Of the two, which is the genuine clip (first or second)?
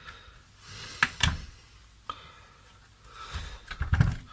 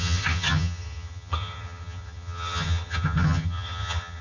first